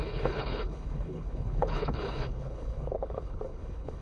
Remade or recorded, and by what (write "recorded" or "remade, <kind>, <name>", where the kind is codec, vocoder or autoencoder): remade, codec, HILCodec